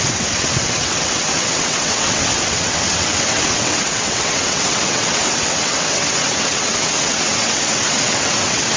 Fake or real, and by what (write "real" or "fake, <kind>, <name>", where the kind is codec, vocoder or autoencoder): fake, vocoder, WaveNeXt